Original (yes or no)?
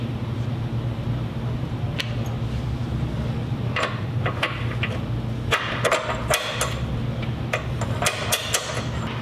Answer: yes